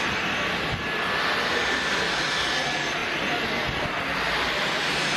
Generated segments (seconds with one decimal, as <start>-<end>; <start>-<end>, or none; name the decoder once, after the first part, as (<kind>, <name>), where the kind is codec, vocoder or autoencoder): none